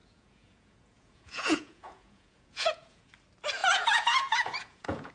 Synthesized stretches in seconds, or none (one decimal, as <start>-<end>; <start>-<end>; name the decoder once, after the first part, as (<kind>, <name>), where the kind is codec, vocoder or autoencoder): 0.0-3.1 (vocoder, Vocos); 3.6-5.1